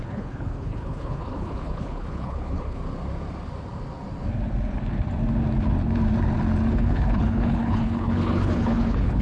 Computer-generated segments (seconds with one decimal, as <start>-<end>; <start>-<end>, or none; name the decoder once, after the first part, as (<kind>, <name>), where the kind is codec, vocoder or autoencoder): 0.0-2.8 (codec, HILCodec); 6.7-9.2